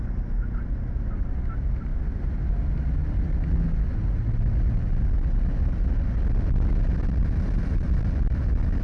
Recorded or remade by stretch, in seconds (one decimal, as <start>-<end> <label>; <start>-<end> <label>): 0.0-8.8 recorded